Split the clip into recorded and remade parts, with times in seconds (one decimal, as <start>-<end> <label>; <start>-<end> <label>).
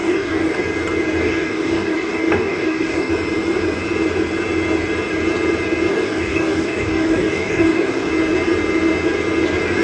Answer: 0.0-0.6 remade; 0.6-1.2 recorded; 1.2-3.1 remade; 3.1-5.9 recorded; 5.9-8.1 remade; 8.1-9.8 recorded